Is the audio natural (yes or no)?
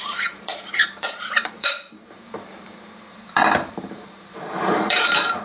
no